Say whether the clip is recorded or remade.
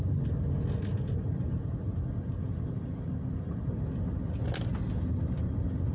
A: recorded